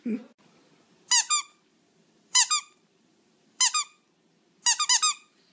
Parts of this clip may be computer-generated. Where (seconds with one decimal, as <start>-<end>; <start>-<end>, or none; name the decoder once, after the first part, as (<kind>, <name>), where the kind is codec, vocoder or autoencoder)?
1.7-3.6 (vocoder, BigVGAN v2)